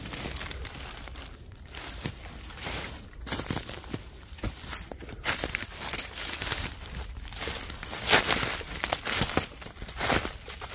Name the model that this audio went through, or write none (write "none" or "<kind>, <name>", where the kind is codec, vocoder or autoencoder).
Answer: vocoder, BigVGAN v2